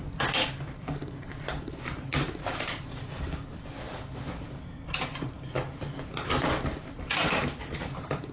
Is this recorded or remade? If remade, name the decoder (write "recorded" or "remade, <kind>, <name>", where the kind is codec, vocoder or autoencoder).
remade, vocoder, BigVGAN v2